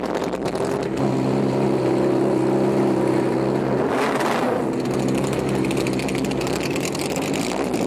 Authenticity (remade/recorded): recorded